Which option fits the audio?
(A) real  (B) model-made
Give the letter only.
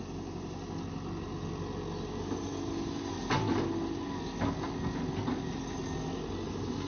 A